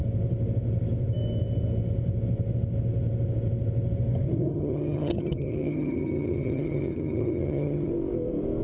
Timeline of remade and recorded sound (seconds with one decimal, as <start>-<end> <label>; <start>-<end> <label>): 0.0-4.5 recorded; 4.5-7.9 remade; 7.9-8.6 recorded